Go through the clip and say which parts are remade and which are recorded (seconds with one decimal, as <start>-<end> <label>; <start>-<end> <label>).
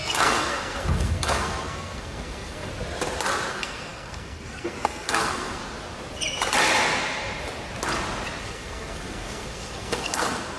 0.0-2.7 remade; 2.7-3.5 recorded; 3.5-5.6 remade; 5.6-8.4 recorded; 8.4-10.6 remade